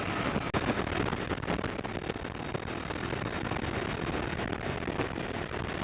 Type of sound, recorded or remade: recorded